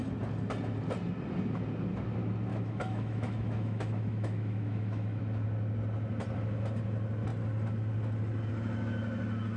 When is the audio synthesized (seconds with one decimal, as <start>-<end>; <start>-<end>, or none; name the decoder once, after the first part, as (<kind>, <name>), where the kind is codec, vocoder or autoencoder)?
2.5-5.2 (autoencoder, DAC-VAE)